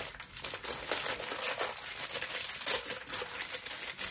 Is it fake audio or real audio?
real